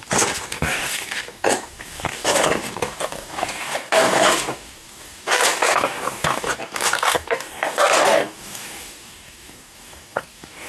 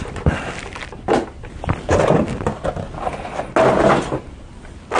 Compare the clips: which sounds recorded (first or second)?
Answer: second